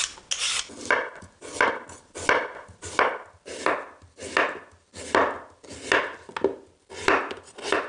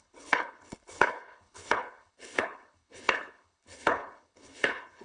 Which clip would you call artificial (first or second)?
second